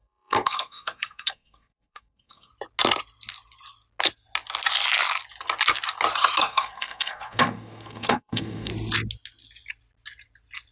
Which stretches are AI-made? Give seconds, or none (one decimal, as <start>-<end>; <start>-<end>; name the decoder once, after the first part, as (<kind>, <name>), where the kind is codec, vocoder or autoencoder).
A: 0.0-2.5 (codec, SNAC); 6.4-8.7